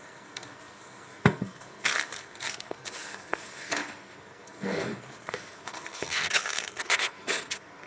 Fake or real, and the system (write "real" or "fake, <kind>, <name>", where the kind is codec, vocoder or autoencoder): fake, codec, SNAC